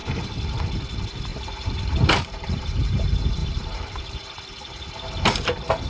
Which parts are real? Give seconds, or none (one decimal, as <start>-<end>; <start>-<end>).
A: 0.0-1.3; 3.0-3.4; 4.2-5.9